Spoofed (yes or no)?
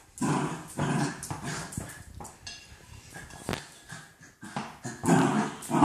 no